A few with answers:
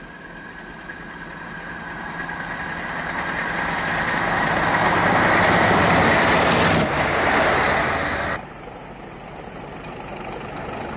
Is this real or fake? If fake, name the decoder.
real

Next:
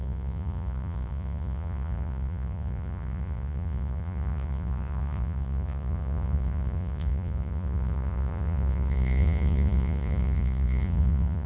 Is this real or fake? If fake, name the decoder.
fake, vocoder, Vocos